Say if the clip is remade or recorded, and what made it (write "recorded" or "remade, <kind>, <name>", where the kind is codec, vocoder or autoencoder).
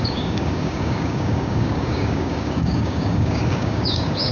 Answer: remade, codec, DAC